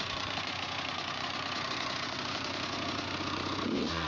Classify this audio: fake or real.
fake